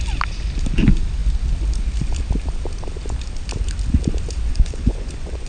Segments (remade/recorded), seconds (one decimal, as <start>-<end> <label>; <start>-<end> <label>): 0.0-4.5 recorded; 4.5-5.5 remade